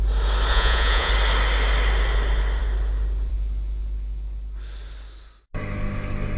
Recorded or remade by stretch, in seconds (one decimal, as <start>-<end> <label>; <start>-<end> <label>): 0.0-0.5 recorded; 0.5-1.1 remade; 1.1-6.4 recorded